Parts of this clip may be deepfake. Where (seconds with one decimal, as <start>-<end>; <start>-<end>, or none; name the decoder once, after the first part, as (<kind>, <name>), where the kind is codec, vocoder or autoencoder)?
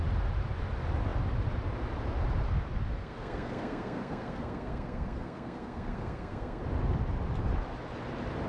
3.0-6.6 (codec, SNAC)